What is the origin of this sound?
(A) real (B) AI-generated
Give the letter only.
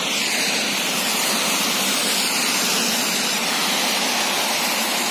A